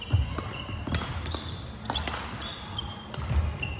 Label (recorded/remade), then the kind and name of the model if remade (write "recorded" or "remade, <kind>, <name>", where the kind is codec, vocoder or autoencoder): recorded